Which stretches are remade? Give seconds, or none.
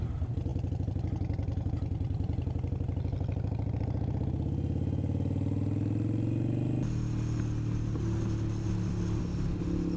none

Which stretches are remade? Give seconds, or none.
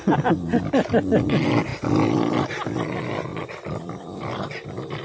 1.7-2.4 (vocoder, BigVGAN v2); 3.3-4.5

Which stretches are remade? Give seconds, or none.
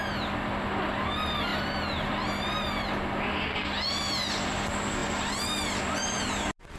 none